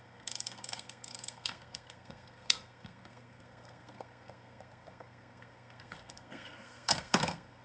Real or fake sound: fake